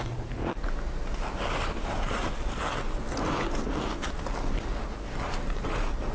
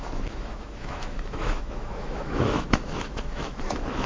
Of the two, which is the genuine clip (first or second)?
first